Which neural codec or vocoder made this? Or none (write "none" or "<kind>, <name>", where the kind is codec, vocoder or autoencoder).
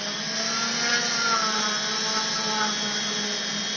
none